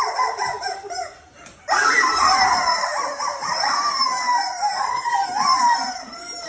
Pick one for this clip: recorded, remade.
remade